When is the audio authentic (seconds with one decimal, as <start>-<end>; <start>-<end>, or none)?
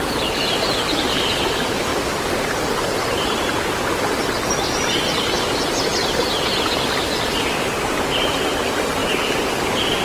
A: 0.0-1.9; 4.2-5.9; 7.4-9.0